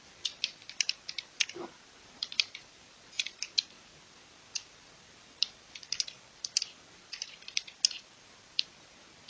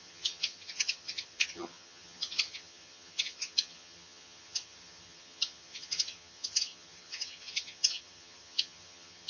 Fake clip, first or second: second